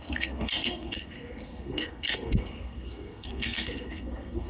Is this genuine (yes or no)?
no